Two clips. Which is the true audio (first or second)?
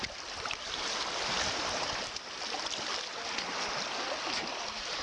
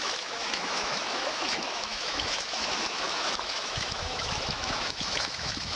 first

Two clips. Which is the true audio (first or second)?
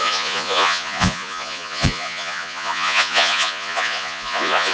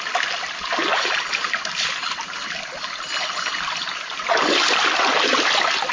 second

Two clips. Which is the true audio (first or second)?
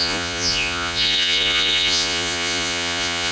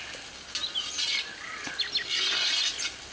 second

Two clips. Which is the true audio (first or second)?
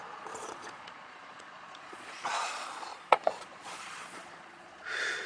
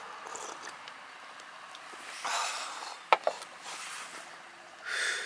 second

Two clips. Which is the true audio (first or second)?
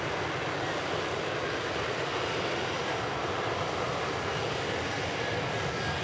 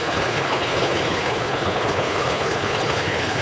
first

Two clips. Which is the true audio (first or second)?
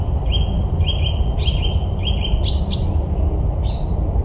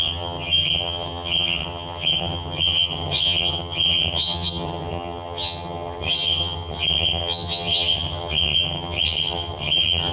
first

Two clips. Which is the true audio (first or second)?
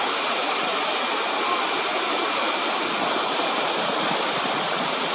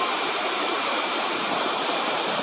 first